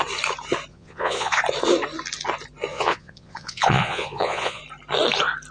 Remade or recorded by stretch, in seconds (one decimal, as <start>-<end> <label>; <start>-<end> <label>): 0.0-0.7 recorded; 0.7-1.4 remade; 1.4-2.7 recorded; 2.7-4.6 remade; 4.6-5.5 recorded